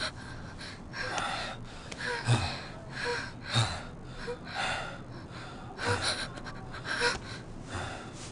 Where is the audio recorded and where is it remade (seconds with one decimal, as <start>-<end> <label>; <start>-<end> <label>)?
0.0-1.4 recorded; 1.4-2.4 remade; 2.4-8.3 recorded